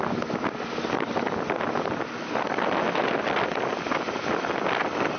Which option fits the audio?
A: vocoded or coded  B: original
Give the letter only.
B